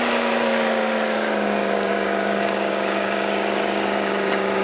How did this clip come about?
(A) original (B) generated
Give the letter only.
B